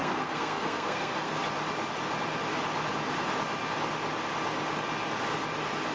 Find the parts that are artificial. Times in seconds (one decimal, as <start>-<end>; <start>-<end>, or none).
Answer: 0.0-1.4